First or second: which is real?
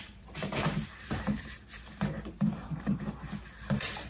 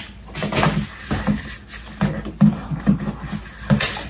second